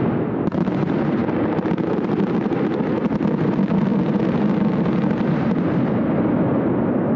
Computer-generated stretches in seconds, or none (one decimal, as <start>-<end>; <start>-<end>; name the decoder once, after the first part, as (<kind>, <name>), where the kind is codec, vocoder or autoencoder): none